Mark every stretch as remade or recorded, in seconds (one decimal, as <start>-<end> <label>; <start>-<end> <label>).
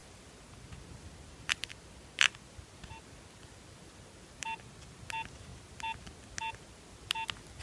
0.0-4.6 remade; 4.6-7.6 recorded